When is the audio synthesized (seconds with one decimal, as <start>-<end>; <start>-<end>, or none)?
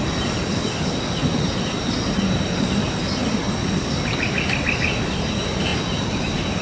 none